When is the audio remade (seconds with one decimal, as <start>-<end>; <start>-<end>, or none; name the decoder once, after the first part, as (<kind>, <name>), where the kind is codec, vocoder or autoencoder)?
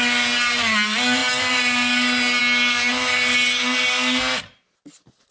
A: none